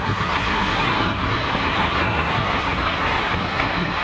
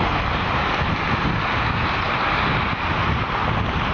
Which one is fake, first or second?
first